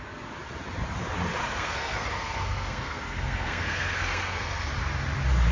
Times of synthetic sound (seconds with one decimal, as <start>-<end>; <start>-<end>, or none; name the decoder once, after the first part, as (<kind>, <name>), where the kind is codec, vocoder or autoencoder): 1.4-4.7 (codec, SNAC)